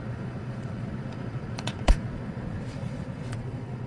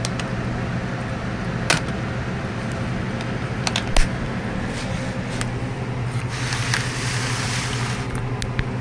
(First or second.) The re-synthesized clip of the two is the first